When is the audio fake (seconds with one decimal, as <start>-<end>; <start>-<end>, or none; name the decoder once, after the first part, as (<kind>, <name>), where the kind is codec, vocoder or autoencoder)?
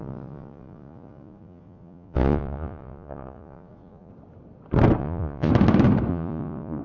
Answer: 0.0-4.1 (vocoder, Vocos); 5.0-5.5; 6.1-6.8